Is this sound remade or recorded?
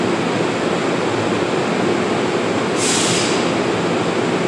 recorded